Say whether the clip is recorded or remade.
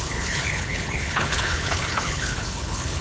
remade